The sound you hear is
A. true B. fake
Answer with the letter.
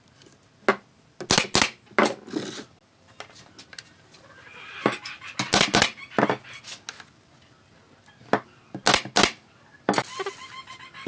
A